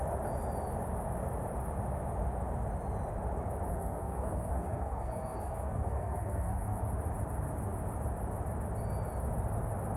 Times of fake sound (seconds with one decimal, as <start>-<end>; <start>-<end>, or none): 3.7-6.8